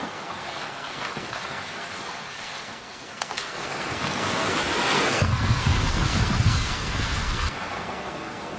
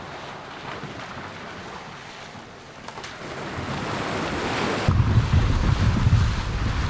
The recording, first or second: second